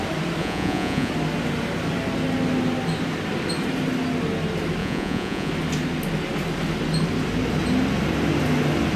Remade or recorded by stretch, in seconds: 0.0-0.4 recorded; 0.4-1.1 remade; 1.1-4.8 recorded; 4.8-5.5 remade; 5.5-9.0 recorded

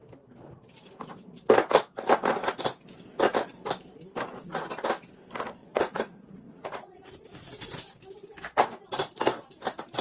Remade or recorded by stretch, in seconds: 0.0-5.6 recorded; 5.6-7.3 remade; 7.3-10.0 recorded

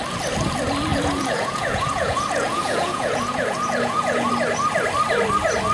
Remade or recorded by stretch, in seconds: 0.0-0.9 recorded; 0.9-4.3 remade; 4.3-5.7 recorded